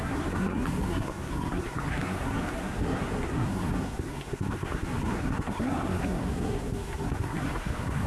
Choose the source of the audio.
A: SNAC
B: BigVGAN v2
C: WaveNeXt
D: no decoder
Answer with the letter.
A